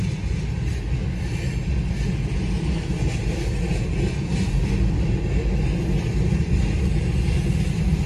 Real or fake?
real